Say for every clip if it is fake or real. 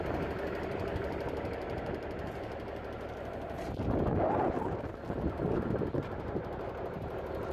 real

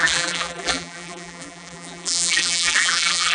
fake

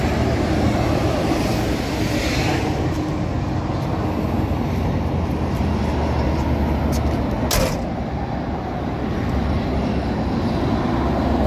real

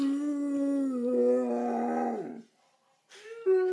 real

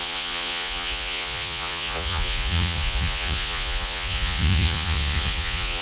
fake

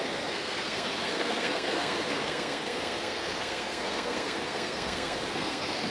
fake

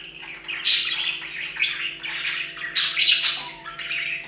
real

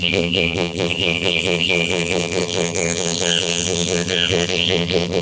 fake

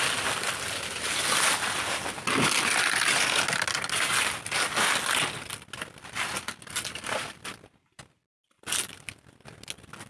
real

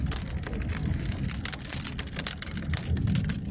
real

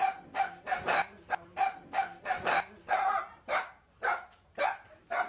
fake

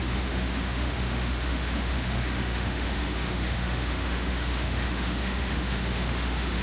fake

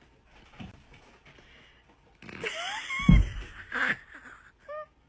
real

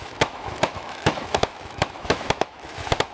fake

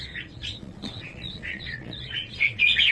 fake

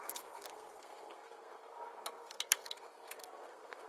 fake